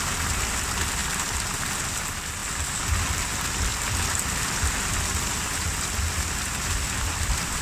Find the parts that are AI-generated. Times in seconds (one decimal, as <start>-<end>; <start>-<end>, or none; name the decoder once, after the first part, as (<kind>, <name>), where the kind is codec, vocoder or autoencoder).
none